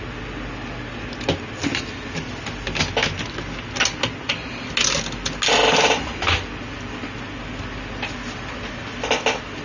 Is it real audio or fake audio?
real